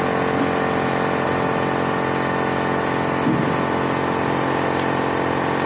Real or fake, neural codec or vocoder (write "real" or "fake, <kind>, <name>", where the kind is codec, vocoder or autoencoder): real